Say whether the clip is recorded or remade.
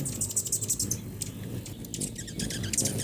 recorded